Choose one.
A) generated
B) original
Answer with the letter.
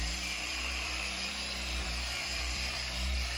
A